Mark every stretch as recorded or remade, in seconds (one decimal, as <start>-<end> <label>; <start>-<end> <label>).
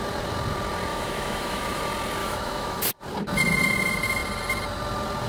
0.0-0.9 recorded; 0.9-1.8 remade; 1.8-2.2 recorded; 2.2-2.8 remade; 2.8-5.3 recorded